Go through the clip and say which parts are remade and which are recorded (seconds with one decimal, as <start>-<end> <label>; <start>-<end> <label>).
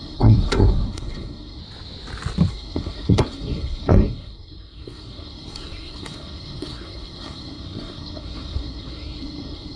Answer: 0.0-1.6 remade; 1.6-2.5 recorded; 2.5-9.8 remade